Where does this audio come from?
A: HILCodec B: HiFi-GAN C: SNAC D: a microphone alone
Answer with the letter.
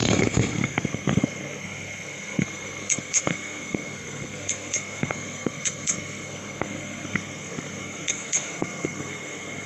C